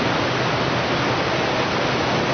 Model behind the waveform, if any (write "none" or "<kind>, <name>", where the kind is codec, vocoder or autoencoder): none